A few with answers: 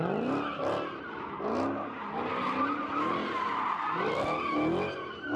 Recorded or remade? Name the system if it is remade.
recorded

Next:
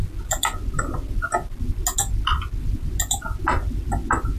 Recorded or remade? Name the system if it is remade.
recorded